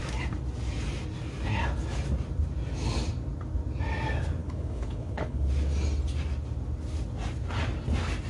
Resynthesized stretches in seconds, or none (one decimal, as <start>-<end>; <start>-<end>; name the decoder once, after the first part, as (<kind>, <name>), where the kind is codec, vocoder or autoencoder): 4.4-5.5 (codec, HILCodec)